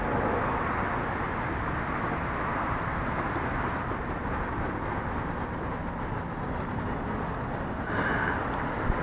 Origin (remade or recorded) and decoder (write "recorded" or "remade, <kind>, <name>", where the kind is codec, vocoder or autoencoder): recorded